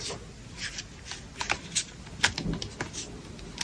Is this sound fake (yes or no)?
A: no